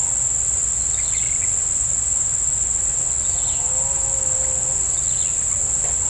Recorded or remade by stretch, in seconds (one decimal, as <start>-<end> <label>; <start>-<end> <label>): 0.0-6.1 recorded